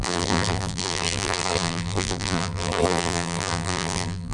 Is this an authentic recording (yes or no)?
no